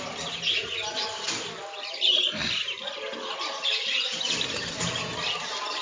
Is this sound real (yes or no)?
yes